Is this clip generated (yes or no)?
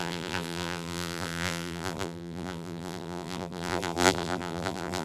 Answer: yes